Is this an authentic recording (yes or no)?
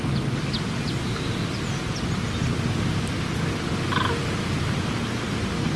yes